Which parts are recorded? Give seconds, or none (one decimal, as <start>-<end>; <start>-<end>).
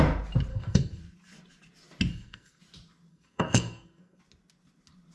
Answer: 0.0-0.5; 1.0-2.1; 2.6-3.1; 4.2-5.1